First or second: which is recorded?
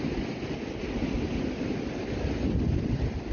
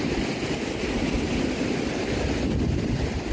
first